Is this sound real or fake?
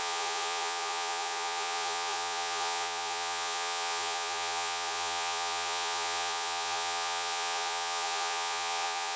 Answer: fake